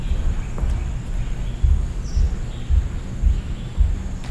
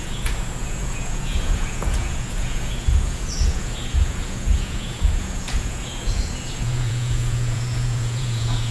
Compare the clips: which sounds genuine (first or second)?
first